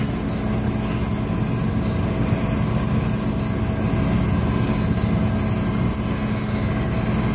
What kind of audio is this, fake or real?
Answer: real